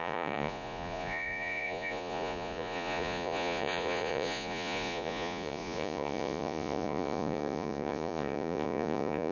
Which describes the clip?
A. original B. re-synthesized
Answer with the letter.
B